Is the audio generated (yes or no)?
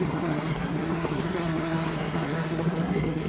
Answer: yes